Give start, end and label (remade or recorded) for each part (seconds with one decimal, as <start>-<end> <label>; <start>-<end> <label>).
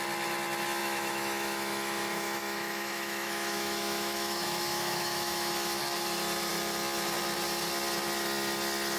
0.0-0.8 recorded; 0.8-5.5 remade; 5.5-9.0 recorded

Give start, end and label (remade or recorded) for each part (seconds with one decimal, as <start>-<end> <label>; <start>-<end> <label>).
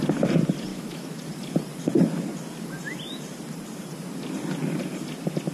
0.0-0.7 recorded; 0.7-1.2 remade; 1.2-5.5 recorded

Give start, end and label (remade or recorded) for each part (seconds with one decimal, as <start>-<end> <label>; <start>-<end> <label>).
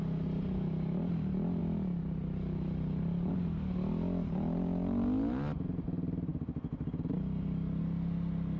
0.0-8.6 recorded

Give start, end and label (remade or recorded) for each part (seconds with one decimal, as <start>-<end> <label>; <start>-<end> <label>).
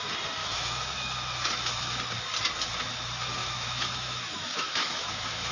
0.0-0.4 recorded; 0.4-2.0 remade; 2.0-3.4 recorded; 3.4-5.5 remade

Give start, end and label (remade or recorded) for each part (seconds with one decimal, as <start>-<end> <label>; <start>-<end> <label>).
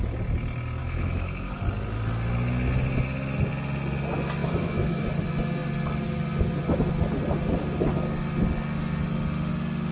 0.0-0.8 recorded; 0.8-1.6 remade; 1.6-4.4 recorded; 4.4-5.0 remade; 5.0-9.9 recorded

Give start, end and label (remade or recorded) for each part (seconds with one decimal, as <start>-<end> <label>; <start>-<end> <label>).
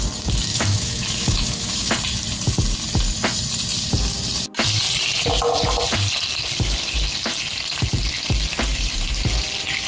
0.0-0.5 recorded; 0.5-1.9 remade; 1.9-9.9 recorded